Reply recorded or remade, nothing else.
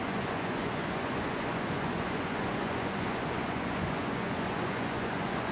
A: remade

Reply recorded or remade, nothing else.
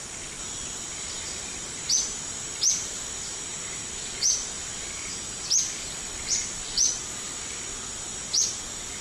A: recorded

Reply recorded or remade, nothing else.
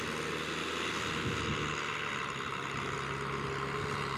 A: recorded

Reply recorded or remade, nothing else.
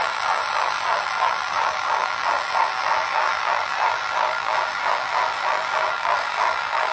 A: remade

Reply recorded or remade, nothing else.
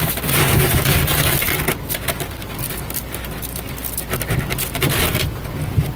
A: recorded